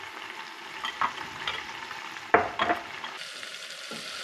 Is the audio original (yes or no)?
yes